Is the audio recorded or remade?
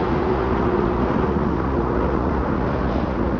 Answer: remade